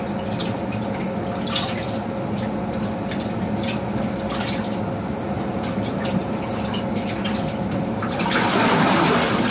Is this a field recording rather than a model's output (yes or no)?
yes